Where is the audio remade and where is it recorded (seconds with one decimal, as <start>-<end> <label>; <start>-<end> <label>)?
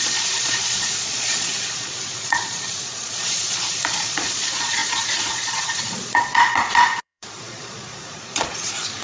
0.0-9.0 remade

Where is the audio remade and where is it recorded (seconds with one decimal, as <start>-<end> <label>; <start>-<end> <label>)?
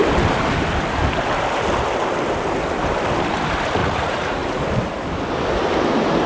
0.0-3.8 recorded; 3.8-4.6 remade; 4.6-6.3 recorded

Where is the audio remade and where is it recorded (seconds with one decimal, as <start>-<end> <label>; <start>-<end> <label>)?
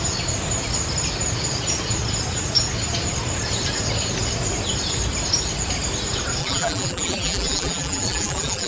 0.0-6.4 recorded; 6.4-8.7 remade